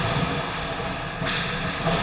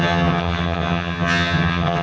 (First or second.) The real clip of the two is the first